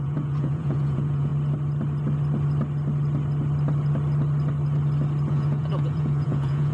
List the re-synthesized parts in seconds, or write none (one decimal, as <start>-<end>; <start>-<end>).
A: 0.0-1.3; 5.3-6.7